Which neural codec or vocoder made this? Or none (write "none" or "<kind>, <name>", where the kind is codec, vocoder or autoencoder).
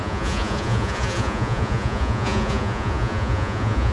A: vocoder, Vocos